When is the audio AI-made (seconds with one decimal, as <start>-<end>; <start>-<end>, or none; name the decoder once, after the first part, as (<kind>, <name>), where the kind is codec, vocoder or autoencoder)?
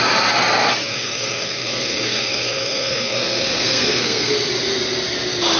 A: 0.9-4.3 (codec, SNAC)